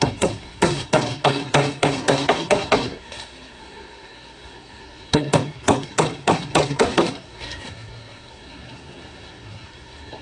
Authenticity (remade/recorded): remade